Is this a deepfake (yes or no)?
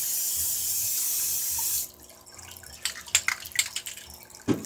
no